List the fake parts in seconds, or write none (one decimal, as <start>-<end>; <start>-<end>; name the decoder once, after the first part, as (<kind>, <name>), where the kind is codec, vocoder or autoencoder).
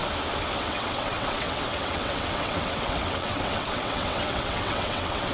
0.6-5.3 (vocoder, WaveNeXt)